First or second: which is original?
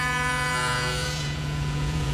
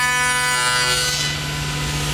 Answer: second